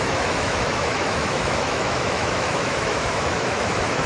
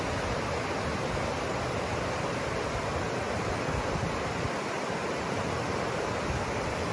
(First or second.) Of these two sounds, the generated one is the first